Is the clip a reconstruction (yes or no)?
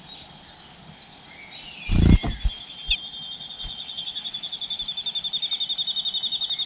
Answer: no